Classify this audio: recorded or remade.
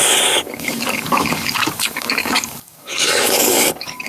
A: remade